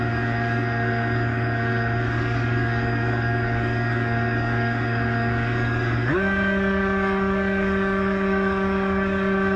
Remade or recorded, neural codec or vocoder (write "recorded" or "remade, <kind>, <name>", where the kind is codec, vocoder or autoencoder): remade, codec, DAC